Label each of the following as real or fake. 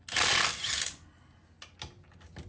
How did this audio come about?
real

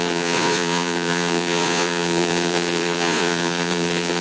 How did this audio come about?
fake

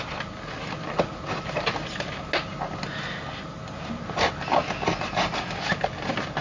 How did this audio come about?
real